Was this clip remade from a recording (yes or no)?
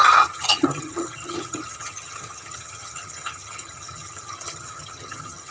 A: yes